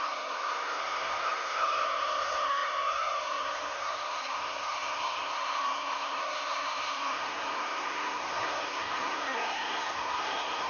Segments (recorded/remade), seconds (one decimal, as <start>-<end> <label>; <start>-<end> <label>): 0.0-10.7 remade